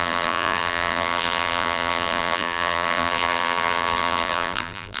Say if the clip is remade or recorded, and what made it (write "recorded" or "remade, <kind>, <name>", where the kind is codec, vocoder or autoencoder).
remade, vocoder, BigVGAN v2